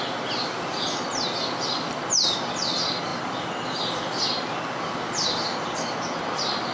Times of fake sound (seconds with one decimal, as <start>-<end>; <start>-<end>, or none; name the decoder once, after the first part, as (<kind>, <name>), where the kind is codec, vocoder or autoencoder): none